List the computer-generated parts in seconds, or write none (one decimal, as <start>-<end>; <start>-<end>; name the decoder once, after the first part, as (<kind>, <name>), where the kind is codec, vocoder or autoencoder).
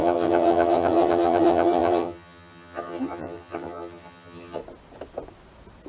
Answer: 0.0-4.6 (vocoder, HiFi-GAN)